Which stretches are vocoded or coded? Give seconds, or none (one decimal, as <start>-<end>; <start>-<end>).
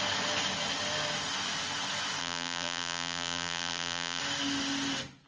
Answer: 2.2-4.2